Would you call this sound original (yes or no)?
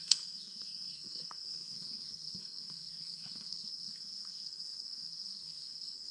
no